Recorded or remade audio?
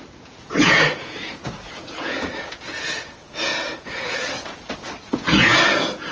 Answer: remade